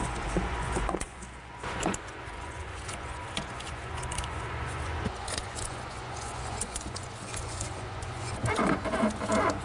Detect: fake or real fake